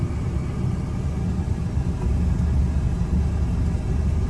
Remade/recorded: recorded